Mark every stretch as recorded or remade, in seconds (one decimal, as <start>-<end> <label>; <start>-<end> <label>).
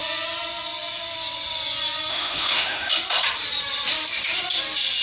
0.0-2.1 recorded; 2.1-2.9 remade; 2.9-5.0 recorded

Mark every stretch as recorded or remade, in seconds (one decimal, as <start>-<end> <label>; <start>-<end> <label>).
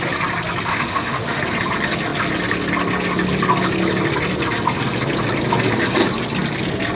0.0-0.7 recorded; 0.7-1.4 remade; 1.4-6.9 recorded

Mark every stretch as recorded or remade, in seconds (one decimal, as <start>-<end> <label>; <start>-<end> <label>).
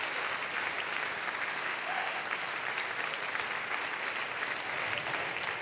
0.0-1.5 recorded; 1.5-2.2 remade; 2.2-5.6 recorded